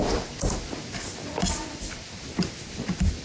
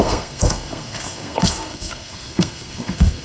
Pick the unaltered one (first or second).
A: first